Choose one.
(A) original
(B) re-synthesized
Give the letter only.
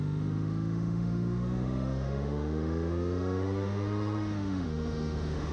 B